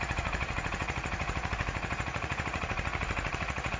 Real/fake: fake